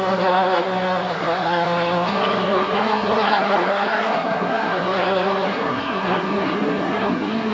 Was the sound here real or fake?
fake